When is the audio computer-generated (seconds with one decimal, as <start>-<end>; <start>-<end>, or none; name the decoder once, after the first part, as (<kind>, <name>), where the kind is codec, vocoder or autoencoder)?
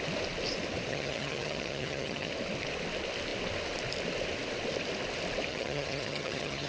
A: 0.9-2.3 (vocoder, HiFi-GAN); 5.5-6.7